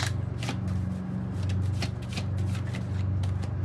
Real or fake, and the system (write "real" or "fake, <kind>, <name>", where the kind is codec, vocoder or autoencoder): real